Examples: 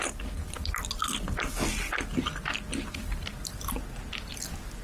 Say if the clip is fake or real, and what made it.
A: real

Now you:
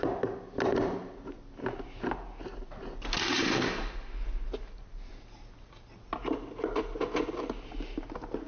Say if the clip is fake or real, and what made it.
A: real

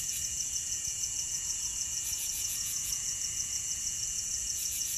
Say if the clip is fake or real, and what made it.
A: fake, vocoder, Vocos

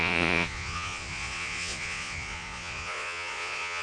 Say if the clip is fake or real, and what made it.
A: fake, vocoder, Vocos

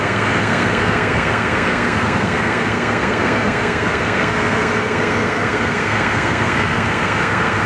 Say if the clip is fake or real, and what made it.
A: fake, codec, SNAC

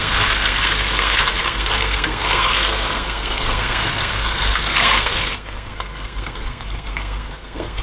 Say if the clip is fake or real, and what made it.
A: fake, codec, SNAC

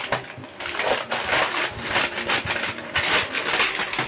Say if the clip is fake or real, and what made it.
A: real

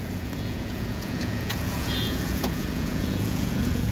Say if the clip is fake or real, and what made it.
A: fake, vocoder, Vocos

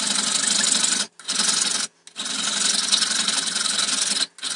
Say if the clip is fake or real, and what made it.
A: real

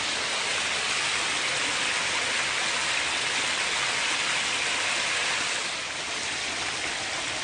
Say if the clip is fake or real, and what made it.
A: real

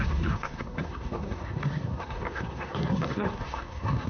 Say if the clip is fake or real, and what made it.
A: fake, codec, SNAC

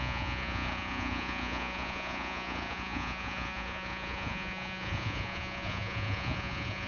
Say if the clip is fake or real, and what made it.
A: fake, vocoder, Vocos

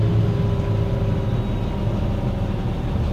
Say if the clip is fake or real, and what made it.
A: real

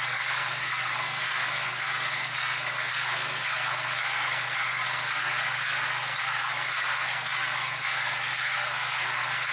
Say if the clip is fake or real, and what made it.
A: fake, codec, SNAC